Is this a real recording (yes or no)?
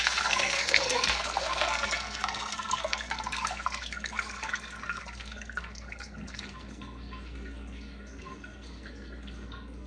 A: no